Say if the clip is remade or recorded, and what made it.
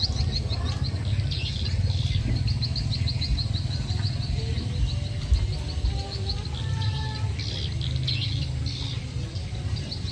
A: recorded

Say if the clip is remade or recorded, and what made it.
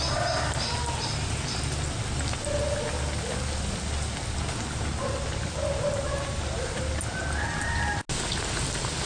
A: recorded